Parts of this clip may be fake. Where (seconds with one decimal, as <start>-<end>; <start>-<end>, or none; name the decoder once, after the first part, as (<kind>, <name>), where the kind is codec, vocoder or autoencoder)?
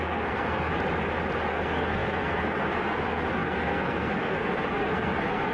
0.0-0.7 (codec, SNAC); 1.5-5.5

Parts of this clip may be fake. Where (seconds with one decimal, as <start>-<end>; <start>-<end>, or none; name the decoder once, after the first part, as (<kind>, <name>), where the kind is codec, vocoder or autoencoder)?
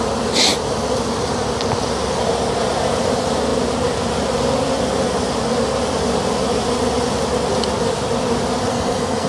8.7-9.3 (codec, SNAC)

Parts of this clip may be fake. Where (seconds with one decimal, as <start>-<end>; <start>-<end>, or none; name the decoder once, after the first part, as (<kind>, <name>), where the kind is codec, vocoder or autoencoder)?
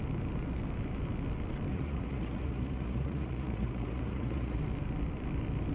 1.7-4.6 (vocoder, Vocos)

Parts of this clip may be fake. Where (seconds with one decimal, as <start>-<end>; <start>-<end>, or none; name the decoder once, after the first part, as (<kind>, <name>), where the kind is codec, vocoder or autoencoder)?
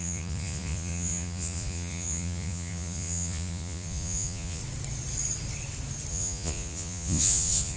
0.0-4.6 (vocoder, Vocos); 6.1-7.8